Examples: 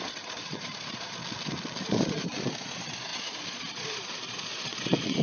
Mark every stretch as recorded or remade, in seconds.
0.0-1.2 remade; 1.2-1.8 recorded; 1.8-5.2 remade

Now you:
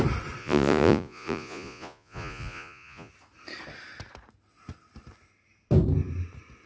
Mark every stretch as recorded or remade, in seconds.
0.0-0.4 recorded; 0.4-3.1 remade; 3.1-6.7 recorded